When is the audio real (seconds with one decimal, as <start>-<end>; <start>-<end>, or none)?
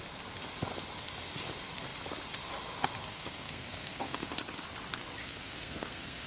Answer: 0.0-3.1; 4.3-5.2